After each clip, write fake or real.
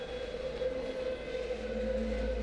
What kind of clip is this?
real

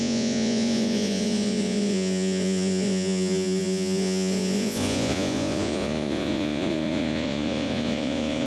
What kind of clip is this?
fake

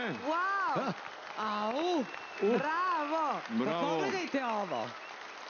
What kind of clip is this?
real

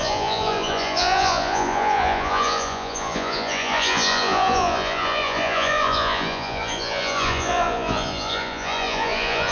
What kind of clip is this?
fake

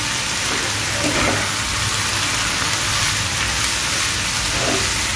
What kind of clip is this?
real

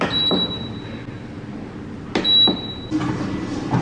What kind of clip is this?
real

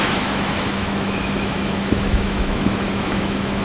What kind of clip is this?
fake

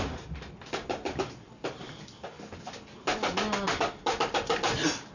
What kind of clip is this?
real